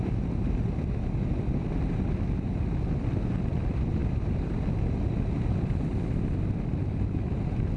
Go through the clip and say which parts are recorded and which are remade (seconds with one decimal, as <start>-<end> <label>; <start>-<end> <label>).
0.0-7.8 recorded